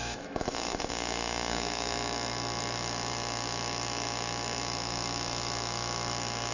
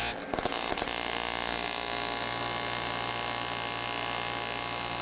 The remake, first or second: first